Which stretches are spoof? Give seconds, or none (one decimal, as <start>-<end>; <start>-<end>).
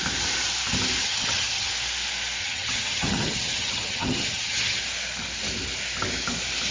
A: 1.0-1.7; 2.4-4.8